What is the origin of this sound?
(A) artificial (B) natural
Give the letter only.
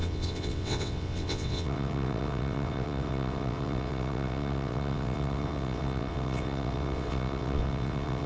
A